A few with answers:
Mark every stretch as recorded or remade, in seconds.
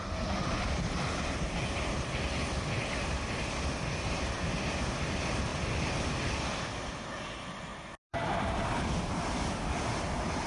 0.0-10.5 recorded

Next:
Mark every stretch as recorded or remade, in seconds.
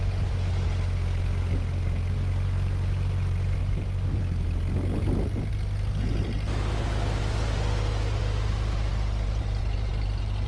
0.0-3.6 recorded; 3.6-4.2 remade; 4.2-10.5 recorded